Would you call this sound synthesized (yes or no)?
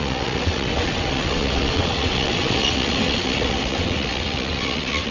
yes